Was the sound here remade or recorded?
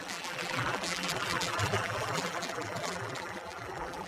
remade